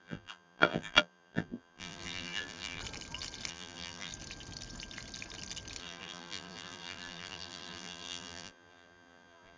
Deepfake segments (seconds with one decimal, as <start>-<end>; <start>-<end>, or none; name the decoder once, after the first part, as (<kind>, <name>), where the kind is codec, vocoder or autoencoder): 0.0-2.8 (vocoder, BigVGAN v2); 3.5-4.1; 5.8-9.6